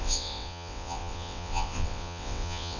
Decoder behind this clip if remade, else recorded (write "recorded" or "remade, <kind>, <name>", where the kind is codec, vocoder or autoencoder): remade, vocoder, WaveNeXt